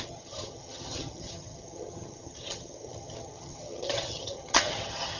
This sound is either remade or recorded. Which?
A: remade